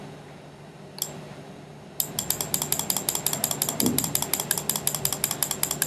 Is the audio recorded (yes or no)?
yes